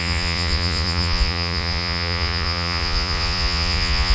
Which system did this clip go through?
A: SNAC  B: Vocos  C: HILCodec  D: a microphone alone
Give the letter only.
B